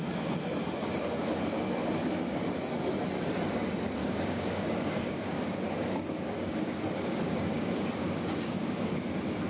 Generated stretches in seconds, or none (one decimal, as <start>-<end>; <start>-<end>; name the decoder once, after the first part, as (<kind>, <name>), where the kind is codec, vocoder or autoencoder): 0.8-1.4 (codec, DAC); 4.0-9.0